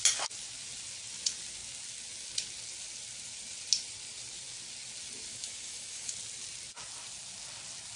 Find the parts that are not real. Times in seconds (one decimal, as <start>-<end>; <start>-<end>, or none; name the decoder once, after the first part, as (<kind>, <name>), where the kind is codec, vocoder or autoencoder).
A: 5.3-6.1 (autoencoder, DAC-VAE)